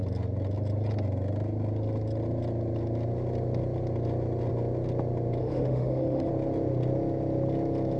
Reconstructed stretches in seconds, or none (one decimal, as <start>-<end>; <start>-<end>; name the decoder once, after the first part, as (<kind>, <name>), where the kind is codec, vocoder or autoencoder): 5.4-6.3 (autoencoder, DAC-VAE)